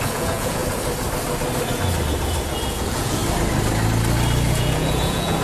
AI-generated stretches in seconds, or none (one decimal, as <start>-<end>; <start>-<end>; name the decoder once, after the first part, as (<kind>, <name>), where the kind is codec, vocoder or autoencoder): 0.0-0.6 (vocoder, Vocos); 2.5-3.2; 4.5-5.4